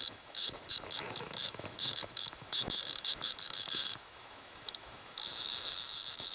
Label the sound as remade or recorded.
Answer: remade